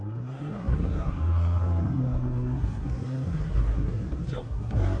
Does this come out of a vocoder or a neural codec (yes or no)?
yes